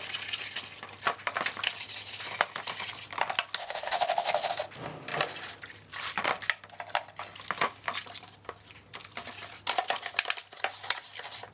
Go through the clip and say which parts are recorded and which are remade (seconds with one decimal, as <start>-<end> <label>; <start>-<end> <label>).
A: 0.0-3.6 recorded; 3.6-4.5 remade; 4.5-11.5 recorded